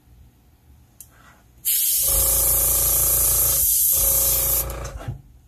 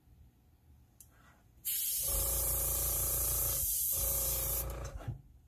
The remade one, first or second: second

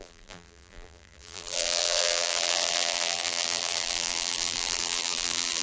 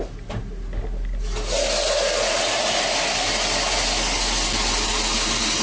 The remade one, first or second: first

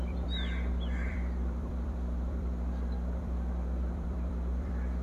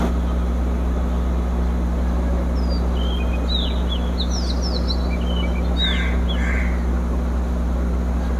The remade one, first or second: first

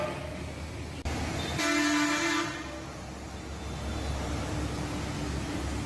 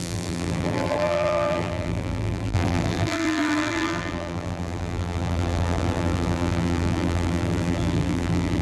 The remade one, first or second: second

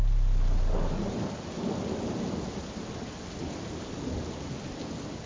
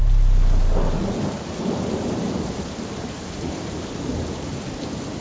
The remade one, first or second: second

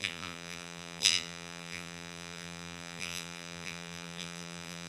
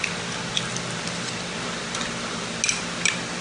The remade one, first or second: first